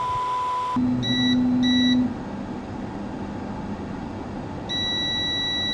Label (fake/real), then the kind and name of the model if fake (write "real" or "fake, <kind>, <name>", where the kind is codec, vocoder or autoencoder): real